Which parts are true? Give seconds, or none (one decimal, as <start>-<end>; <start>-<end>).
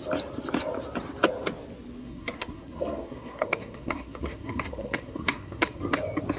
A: 0.0-2.0; 5.8-6.4